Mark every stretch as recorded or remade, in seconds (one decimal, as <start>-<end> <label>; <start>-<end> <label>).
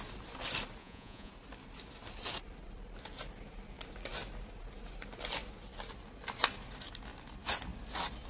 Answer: 0.0-0.8 recorded; 0.8-1.3 remade; 1.3-8.3 recorded